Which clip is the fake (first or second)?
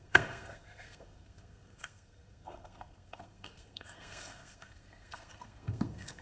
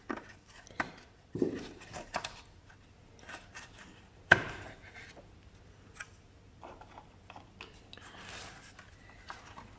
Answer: first